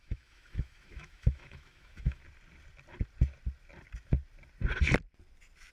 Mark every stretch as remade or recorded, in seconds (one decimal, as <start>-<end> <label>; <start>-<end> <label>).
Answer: 0.0-2.2 remade; 2.2-5.7 recorded